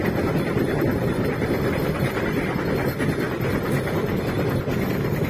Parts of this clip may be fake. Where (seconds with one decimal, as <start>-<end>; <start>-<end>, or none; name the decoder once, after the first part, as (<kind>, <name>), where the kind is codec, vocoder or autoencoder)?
none